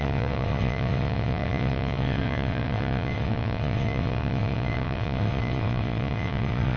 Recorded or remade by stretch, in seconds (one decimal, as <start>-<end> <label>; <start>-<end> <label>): 0.0-6.8 remade